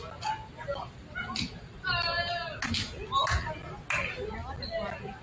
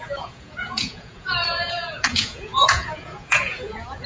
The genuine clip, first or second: first